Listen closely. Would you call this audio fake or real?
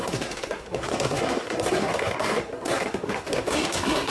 fake